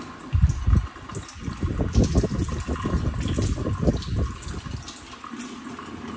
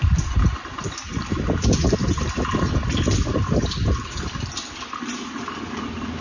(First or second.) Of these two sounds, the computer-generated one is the second